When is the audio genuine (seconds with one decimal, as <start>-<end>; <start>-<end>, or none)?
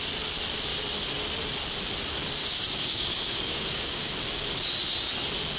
0.0-2.4; 4.1-5.6